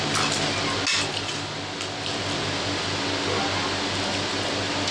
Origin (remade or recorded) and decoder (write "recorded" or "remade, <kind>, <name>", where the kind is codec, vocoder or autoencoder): recorded